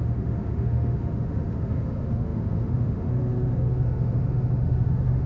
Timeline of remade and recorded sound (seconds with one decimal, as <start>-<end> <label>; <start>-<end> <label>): 0.0-5.3 remade